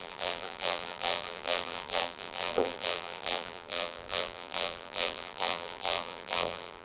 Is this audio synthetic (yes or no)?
yes